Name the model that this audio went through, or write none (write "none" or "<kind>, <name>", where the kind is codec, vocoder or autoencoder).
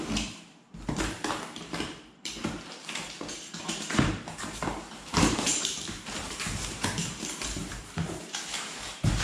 vocoder, BigVGAN v2